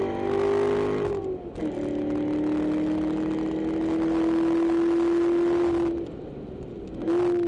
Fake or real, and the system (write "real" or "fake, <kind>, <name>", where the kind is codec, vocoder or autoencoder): real